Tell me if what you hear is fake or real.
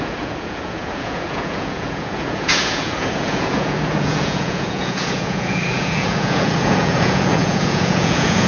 fake